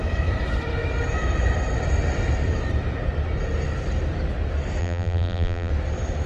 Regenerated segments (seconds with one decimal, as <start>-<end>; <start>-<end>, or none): 4.8-5.7